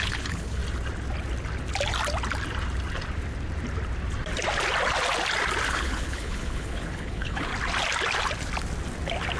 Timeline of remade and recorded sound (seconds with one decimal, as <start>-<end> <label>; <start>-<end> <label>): 0.0-0.6 remade; 0.6-5.7 recorded; 5.7-7.5 remade; 7.5-9.4 recorded